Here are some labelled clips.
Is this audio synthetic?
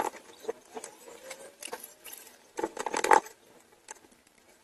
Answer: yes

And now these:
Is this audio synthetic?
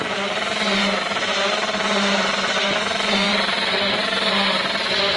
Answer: yes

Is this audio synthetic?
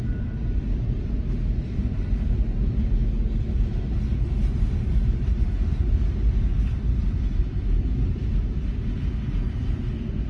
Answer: no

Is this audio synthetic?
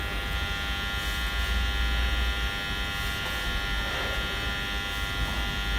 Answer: no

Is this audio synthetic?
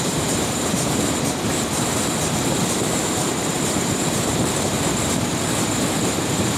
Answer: yes